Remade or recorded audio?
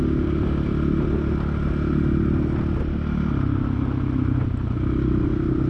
recorded